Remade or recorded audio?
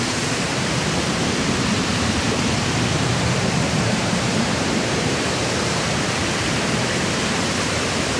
remade